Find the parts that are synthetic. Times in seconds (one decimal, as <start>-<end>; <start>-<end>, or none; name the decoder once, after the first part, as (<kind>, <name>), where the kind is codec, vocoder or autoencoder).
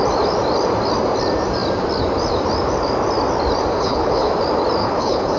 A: 3.7-4.3 (codec, HILCodec); 4.8-5.4